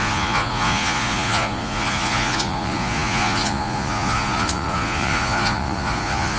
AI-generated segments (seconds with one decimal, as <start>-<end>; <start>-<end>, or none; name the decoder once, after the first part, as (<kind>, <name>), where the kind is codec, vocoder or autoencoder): 0.0-6.4 (vocoder, Vocos)